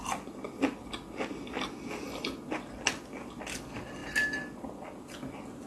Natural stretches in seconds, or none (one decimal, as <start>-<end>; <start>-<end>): 0.0-5.7